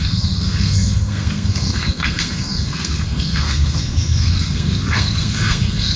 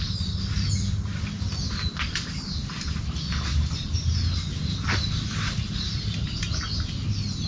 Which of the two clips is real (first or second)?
second